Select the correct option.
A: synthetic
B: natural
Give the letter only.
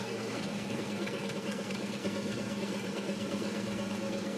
A